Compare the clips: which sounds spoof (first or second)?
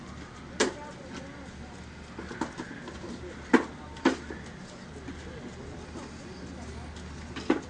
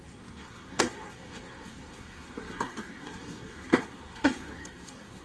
second